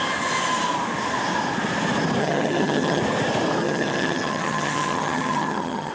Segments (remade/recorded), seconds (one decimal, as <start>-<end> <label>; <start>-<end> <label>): 0.0-2.2 recorded; 2.2-3.0 remade; 3.0-3.6 recorded; 3.6-5.9 remade